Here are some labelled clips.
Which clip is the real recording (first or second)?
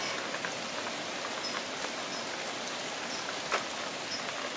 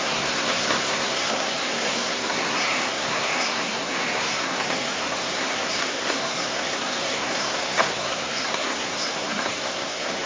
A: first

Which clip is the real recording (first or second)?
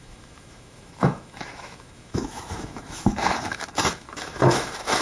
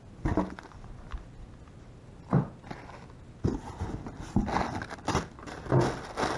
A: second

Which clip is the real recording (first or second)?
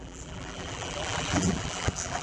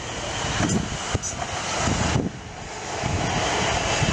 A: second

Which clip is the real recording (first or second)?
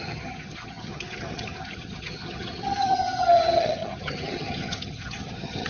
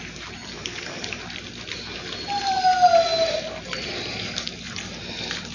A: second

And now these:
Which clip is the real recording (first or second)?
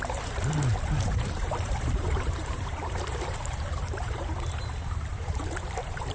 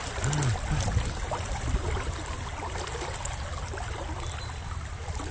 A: second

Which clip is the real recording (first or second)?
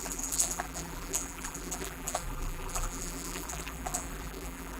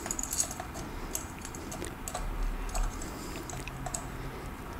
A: second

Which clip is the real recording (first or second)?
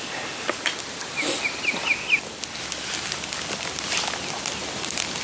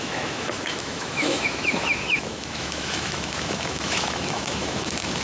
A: first